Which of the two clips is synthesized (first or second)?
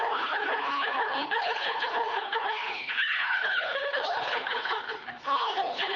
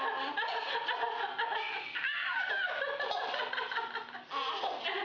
first